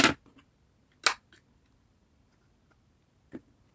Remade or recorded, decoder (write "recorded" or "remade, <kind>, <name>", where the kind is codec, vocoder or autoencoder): recorded